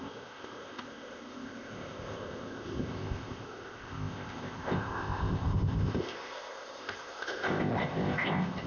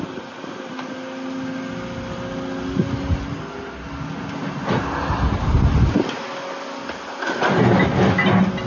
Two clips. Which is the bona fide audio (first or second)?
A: second